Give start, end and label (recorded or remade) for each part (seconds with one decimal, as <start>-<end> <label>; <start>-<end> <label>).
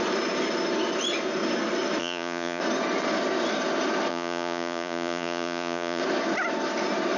0.0-2.0 recorded; 2.0-2.6 remade; 2.6-4.1 recorded; 4.1-6.0 remade; 6.0-7.2 recorded